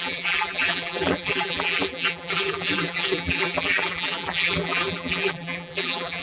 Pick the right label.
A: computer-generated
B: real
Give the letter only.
A